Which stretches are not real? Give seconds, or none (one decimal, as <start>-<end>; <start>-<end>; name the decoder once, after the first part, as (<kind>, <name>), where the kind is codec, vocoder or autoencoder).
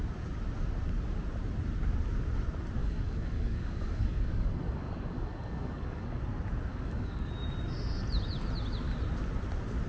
2.8-6.2 (codec, DAC); 6.7-7.3